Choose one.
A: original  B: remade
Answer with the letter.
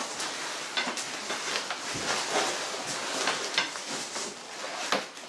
A